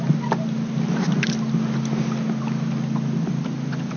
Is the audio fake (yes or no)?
no